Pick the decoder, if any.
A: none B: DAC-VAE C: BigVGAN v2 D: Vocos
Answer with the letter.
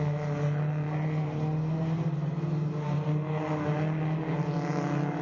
A